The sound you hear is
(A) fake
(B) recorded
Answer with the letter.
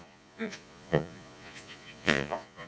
A